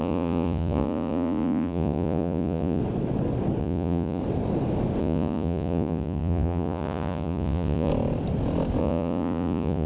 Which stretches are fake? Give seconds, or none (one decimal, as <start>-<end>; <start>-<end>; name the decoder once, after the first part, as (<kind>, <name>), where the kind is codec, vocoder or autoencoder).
0.0-2.8 (vocoder, Vocos); 3.6-4.2; 5.0-7.9; 8.8-9.9